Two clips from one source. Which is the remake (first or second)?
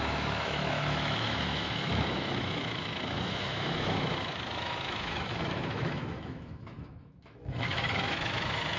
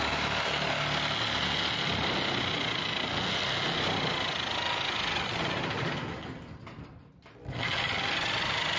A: first